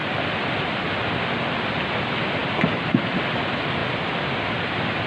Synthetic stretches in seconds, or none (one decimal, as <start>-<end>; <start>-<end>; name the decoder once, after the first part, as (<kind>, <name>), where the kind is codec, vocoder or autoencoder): none

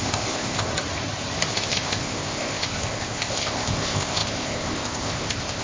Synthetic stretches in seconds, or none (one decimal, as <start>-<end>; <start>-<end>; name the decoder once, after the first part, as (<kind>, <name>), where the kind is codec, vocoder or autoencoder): 0.0-0.7 (codec, ZipCodec); 1.5-5.6

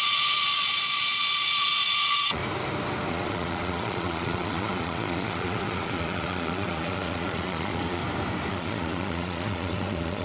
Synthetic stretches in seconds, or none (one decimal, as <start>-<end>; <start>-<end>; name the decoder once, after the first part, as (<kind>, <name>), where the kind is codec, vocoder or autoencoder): 0.0-2.4 (vocoder, Vocos); 3.1-8.0; 8.5-10.2

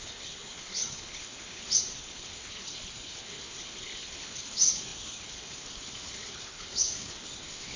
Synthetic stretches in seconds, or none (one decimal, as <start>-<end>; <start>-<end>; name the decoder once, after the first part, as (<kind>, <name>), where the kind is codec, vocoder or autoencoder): 0.0-7.8 (codec, HILCodec)

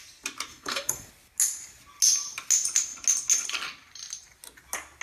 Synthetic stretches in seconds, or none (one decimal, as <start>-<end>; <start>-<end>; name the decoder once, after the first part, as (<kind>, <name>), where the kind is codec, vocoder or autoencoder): 0.5-1.1 (codec, SNAC)

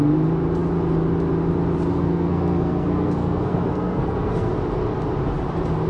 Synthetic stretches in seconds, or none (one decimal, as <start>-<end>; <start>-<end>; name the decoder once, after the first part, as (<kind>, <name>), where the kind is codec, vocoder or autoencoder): 1.9-4.5 (codec, SNAC)

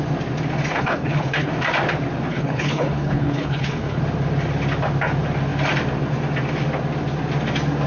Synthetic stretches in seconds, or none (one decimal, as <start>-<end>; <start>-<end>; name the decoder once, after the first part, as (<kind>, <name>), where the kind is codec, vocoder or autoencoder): 0.7-1.5 (codec, HILCodec); 2.3-4.0

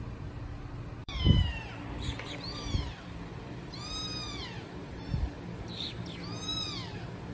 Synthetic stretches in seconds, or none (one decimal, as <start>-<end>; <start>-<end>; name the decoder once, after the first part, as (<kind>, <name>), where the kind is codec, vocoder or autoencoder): 1.0-5.4 (vocoder, BigVGAN v2)